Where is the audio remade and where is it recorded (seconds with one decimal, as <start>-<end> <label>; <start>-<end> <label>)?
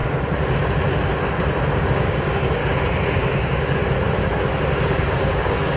0.0-1.8 recorded; 1.8-2.6 remade; 2.6-3.1 recorded; 3.1-3.8 remade; 3.8-5.0 recorded; 5.0-5.8 remade